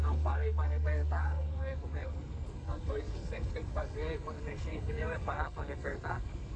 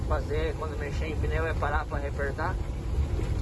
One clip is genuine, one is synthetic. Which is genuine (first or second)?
second